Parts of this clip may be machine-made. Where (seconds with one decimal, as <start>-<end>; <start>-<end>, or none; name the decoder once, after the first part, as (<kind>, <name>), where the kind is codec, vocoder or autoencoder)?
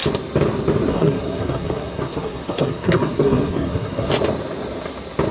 0.9-4.1 (codec, SNAC)